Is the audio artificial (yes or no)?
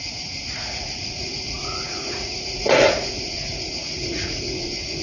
yes